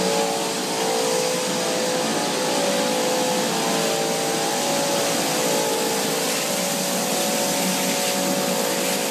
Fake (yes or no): no